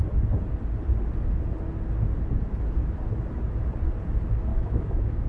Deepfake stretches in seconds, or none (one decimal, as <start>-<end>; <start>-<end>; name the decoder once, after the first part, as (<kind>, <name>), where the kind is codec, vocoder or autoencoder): 4.5-5.3 (autoencoder, DAC-VAE)